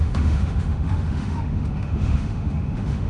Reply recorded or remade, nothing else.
remade